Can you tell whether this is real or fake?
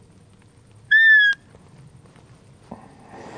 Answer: real